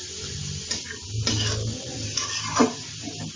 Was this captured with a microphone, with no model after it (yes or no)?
yes